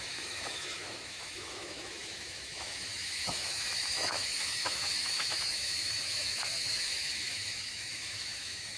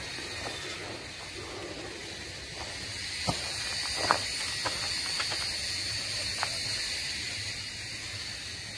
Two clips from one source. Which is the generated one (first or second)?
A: first